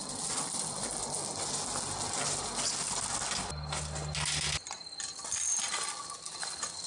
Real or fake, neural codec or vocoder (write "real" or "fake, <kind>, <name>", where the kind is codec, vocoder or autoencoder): real